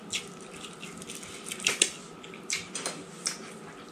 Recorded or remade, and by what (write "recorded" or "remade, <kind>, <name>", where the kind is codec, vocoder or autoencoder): recorded